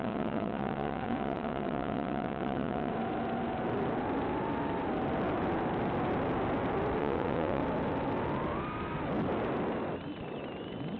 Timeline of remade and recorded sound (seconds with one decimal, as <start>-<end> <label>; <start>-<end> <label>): 0.0-2.9 remade; 2.9-7.0 recorded; 7.0-7.6 remade; 7.6-11.0 recorded